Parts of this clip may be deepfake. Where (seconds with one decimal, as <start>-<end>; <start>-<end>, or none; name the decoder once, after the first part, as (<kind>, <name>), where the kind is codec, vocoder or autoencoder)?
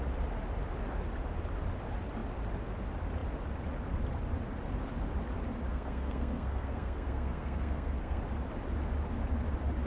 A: 5.7-8.2 (codec, SNAC)